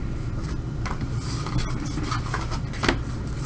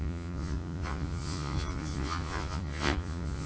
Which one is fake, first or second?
second